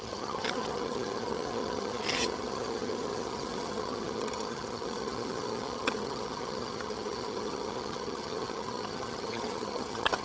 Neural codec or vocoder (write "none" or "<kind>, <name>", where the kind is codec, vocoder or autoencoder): vocoder, HiFi-GAN